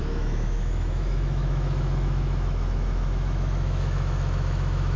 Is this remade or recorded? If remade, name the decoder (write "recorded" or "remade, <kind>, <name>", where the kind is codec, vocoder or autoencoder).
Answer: remade, autoencoder, DAC-VAE